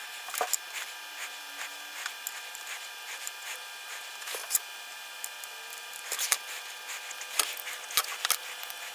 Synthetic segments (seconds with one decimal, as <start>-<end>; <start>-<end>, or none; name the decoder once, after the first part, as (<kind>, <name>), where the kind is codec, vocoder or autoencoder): none